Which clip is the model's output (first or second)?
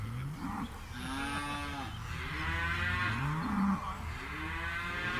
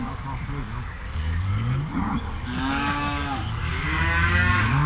second